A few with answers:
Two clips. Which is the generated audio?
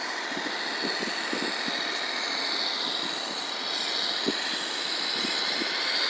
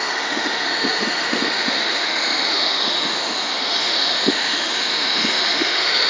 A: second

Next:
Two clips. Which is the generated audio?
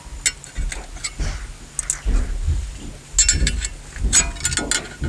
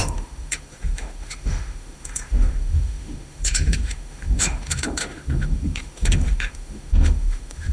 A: second